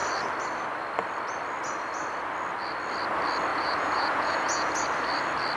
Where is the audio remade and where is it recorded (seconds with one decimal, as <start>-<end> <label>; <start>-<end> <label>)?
0.0-3.5 recorded; 3.5-4.7 remade; 4.7-5.6 recorded